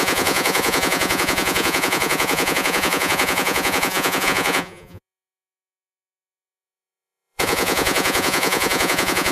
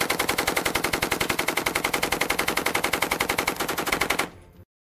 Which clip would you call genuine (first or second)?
second